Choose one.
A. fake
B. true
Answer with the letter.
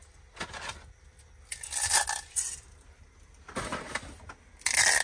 B